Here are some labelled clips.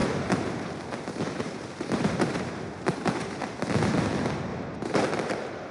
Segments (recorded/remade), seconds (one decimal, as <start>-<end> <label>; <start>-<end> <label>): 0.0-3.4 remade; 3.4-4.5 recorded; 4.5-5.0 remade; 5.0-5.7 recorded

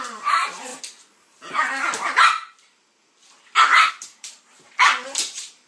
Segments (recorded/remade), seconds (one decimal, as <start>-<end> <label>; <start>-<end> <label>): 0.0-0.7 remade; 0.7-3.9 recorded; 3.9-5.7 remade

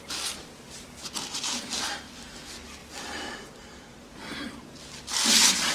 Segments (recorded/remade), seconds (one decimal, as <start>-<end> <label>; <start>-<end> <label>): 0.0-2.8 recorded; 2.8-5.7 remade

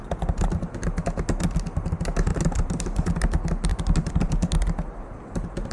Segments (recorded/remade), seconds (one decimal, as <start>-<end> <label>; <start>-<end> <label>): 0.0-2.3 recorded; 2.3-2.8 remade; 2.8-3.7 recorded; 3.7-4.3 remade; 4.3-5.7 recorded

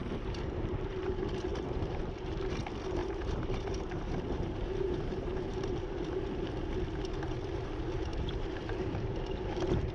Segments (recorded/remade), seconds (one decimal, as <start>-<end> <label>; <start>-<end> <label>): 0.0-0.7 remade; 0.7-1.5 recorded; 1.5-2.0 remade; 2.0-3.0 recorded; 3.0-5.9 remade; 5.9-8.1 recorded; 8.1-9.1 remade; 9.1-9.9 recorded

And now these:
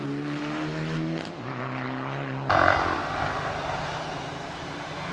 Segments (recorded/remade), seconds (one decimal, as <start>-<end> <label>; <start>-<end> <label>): 0.0-3.0 recorded; 3.0-5.1 remade

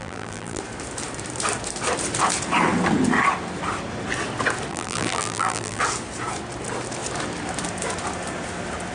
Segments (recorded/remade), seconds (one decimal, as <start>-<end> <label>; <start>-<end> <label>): 0.0-0.6 remade; 0.6-4.7 recorded; 4.7-5.8 remade; 5.8-8.9 recorded

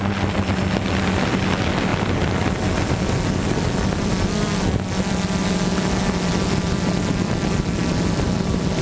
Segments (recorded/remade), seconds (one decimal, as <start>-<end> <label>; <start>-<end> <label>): 0.0-8.8 recorded